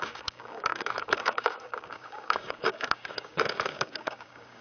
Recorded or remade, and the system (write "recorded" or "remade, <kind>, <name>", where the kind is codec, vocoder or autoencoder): remade, codec, DAC